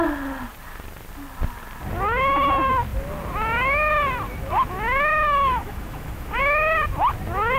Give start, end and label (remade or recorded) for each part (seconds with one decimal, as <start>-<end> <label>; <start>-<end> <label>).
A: 0.0-5.1 recorded; 5.1-6.4 remade; 6.4-7.6 recorded